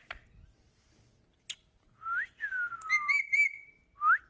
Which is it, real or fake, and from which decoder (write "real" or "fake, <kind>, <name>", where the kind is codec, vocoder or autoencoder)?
real